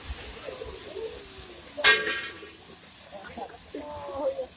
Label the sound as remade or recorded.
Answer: recorded